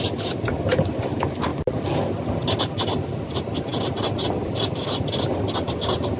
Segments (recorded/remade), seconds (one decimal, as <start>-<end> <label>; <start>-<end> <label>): 0.0-6.2 remade